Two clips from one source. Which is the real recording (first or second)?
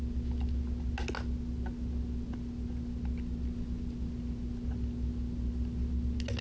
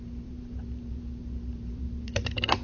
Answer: first